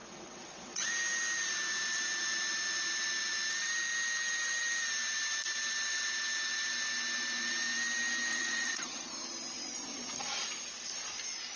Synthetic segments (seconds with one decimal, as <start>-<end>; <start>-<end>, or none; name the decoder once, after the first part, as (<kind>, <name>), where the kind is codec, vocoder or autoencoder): 0.0-0.9 (vocoder, WaveNeXt); 8.3-9.1